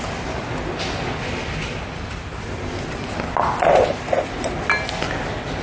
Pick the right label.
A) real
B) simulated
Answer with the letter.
A